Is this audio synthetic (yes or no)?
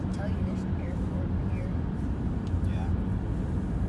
no